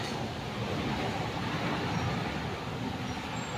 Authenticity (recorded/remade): recorded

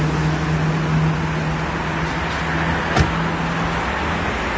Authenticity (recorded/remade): recorded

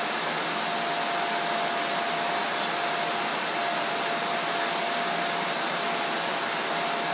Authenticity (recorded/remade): recorded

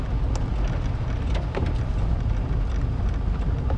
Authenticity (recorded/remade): recorded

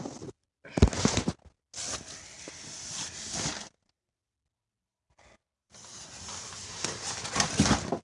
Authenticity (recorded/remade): recorded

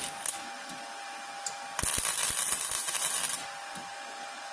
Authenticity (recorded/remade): recorded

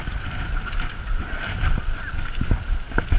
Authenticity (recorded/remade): remade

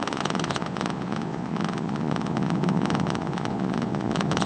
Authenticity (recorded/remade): remade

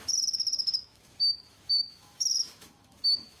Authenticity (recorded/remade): remade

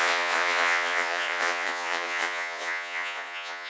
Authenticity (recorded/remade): remade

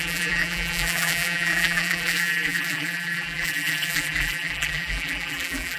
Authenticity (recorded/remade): remade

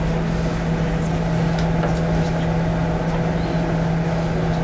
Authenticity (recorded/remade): recorded